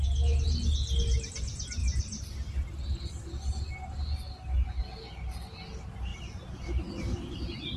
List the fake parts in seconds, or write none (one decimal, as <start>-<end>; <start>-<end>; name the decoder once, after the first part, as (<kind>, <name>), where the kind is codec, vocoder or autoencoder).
none